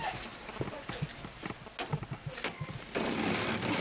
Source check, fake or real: real